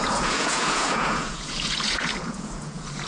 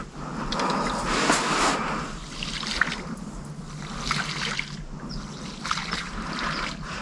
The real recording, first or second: second